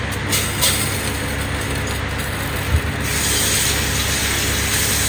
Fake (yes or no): no